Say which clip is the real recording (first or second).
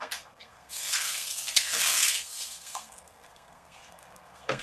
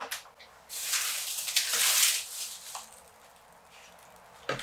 second